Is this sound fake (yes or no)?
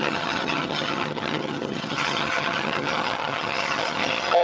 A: yes